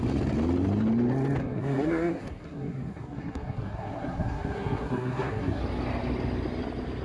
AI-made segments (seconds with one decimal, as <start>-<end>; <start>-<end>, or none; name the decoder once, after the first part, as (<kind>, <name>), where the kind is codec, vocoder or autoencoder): 1.4-5.6 (codec, SNAC)

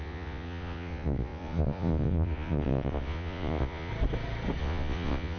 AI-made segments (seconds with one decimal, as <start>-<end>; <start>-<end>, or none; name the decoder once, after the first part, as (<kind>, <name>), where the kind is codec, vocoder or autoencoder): 0.0-3.9 (vocoder, Vocos); 4.6-5.4

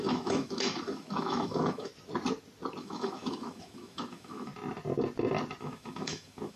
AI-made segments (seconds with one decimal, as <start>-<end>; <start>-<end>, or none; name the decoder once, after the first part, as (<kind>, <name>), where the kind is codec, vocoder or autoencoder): 0.0-1.9 (autoencoder, DAC-VAE); 2.8-4.5; 5.6-6.6

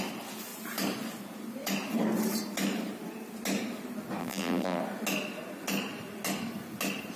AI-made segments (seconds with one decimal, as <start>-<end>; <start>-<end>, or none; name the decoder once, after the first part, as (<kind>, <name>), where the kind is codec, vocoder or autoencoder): 4.2-4.8 (vocoder, BigVGAN v2)